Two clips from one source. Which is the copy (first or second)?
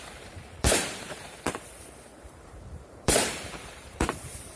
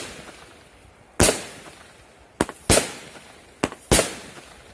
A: first